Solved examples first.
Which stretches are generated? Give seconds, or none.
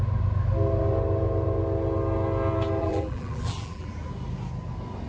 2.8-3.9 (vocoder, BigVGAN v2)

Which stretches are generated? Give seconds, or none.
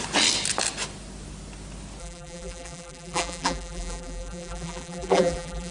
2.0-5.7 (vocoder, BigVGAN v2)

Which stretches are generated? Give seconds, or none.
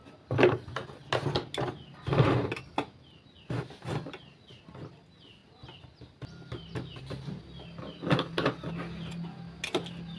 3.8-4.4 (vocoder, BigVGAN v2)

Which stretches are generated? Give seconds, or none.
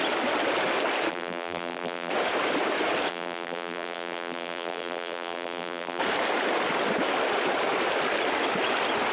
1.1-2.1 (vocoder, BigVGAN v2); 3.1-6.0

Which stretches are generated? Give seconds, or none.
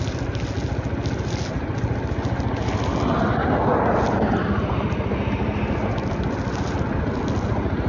3.7-4.6 (vocoder, BigVGAN v2)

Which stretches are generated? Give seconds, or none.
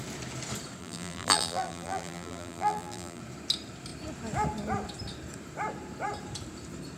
0.8-3.2 (vocoder, BigVGAN v2)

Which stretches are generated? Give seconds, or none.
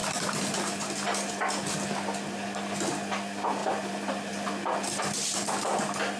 3.6-4.2 (vocoder, BigVGAN v2)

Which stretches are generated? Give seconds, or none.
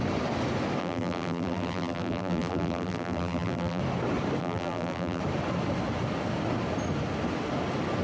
0.8-3.8 (vocoder, BigVGAN v2); 4.4-5.2